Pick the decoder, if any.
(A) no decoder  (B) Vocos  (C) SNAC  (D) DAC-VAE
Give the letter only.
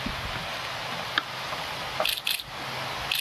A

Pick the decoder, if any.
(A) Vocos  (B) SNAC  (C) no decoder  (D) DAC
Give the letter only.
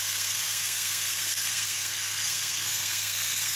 B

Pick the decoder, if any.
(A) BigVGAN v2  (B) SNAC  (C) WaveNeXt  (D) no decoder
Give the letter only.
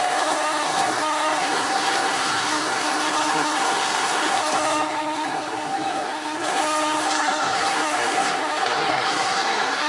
B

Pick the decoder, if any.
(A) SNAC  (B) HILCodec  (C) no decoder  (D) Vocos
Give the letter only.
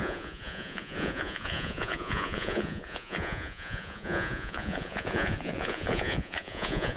D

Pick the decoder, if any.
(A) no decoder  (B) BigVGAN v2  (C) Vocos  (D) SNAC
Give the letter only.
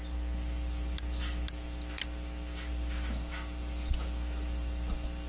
A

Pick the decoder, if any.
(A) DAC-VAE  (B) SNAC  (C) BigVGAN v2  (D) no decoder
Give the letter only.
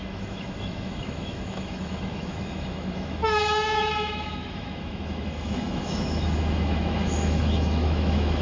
A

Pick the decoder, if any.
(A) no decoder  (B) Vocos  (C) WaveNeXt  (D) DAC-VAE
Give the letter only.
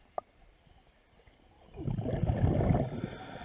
A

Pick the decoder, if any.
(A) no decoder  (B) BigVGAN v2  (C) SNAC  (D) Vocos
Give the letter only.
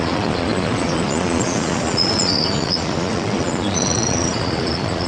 D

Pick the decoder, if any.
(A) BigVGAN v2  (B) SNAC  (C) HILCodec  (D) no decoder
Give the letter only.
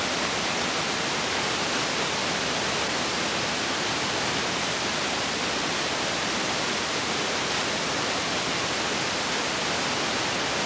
D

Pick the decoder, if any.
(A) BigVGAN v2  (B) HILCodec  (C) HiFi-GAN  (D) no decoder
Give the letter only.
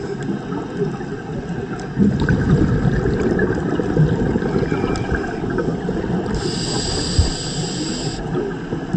D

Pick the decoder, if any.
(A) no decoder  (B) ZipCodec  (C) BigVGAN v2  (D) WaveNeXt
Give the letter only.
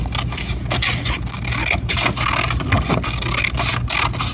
A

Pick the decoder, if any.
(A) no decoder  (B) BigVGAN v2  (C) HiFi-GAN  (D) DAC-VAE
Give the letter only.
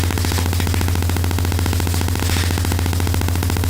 A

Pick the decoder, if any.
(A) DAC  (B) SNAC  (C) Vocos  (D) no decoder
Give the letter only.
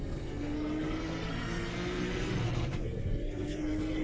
B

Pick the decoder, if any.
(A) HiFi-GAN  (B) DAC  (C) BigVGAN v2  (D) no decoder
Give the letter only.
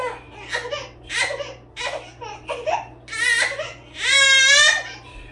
D